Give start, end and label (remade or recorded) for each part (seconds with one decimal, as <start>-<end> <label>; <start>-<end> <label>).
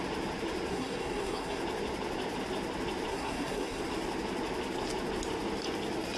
0.0-0.7 recorded; 0.7-1.6 remade; 1.6-3.1 recorded; 3.1-3.8 remade; 3.8-6.2 recorded